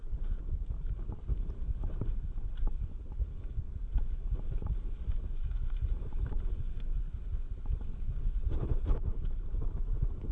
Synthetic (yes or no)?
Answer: no